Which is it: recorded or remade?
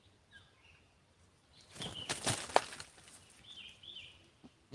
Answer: recorded